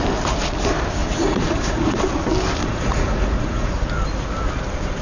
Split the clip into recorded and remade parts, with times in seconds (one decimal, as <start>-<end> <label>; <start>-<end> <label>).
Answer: 0.0-1.0 recorded; 1.0-2.0 remade; 2.0-2.6 recorded; 2.6-3.7 remade; 3.7-5.0 recorded